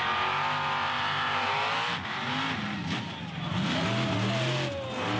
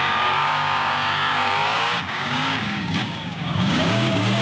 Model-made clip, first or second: second